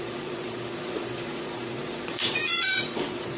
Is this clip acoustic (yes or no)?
no